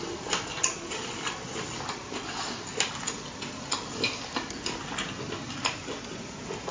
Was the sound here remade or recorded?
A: recorded